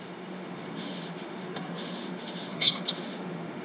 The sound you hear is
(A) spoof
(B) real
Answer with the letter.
A